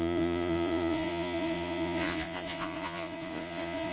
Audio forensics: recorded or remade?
remade